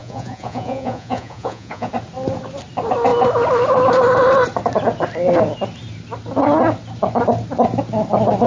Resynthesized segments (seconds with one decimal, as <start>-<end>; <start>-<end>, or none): 0.0-1.9